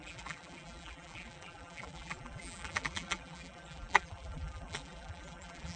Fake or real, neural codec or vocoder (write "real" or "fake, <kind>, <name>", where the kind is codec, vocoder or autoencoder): fake, vocoder, BigVGAN v2